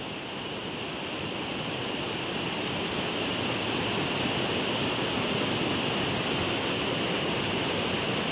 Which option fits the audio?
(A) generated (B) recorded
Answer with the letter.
B